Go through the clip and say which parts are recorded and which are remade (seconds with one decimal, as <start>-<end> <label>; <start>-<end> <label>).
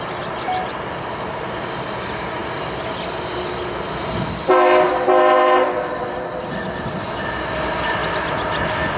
0.0-9.0 recorded